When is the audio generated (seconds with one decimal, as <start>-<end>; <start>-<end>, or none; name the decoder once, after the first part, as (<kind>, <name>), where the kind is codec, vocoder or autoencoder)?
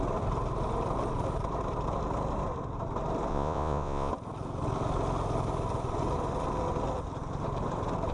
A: 3.3-4.1 (vocoder, Vocos)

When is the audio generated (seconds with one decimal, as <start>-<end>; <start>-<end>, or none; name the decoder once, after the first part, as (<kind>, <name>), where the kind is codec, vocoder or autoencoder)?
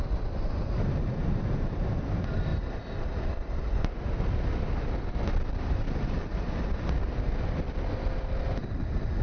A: none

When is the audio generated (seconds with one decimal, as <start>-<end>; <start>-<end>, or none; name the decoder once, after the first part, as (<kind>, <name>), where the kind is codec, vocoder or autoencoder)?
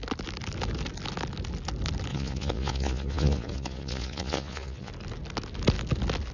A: 2.1-4.9 (vocoder, Vocos)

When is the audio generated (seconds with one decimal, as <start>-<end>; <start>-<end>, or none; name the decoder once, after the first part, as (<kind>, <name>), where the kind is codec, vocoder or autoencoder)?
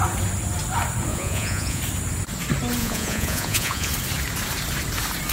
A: 1.1-1.8 (vocoder, Vocos); 2.8-3.9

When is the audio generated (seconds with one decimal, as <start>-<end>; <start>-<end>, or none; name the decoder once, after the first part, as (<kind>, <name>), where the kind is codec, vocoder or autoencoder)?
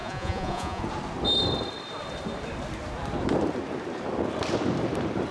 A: 0.0-0.8 (vocoder, Vocos)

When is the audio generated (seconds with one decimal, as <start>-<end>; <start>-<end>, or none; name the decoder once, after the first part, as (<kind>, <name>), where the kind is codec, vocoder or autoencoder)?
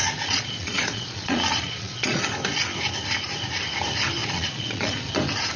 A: 0.0-2.2 (vocoder, Vocos); 4.2-5.1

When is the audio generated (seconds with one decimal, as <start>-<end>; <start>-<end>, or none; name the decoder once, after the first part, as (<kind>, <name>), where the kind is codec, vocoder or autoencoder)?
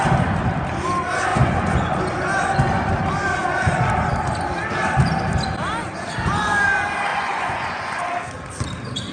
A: 1.3-2.0 (vocoder, Vocos); 7.1-8.0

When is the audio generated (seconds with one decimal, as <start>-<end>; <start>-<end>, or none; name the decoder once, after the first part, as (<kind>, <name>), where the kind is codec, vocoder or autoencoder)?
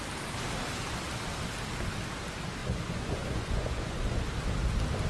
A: 2.6-4.2 (vocoder, Vocos)